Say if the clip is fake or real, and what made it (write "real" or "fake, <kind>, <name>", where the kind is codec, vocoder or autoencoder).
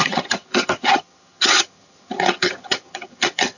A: fake, vocoder, HiFi-GAN